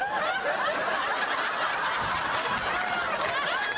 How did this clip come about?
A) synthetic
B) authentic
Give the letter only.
B